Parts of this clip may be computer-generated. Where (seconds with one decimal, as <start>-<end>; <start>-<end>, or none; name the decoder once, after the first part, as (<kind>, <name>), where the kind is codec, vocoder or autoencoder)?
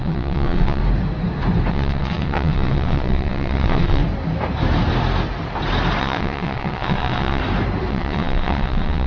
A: 0.0-0.8 (vocoder, WaveNeXt); 1.7-4.0; 6.0-7.4; 7.9-9.1